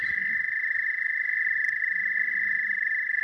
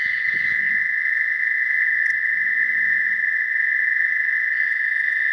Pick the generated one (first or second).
second